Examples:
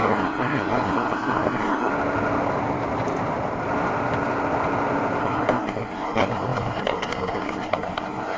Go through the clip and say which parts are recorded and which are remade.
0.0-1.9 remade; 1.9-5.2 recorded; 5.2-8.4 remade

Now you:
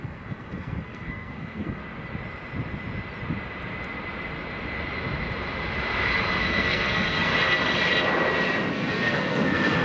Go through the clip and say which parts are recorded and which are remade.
0.0-1.8 remade; 1.8-6.4 recorded; 6.4-7.3 remade; 7.3-8.7 recorded; 8.7-9.8 remade

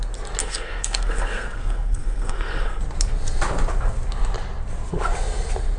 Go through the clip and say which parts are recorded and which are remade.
0.0-0.4 recorded; 0.4-2.8 remade; 2.8-5.8 recorded